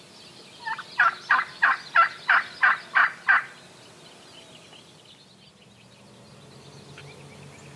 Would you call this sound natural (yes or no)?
yes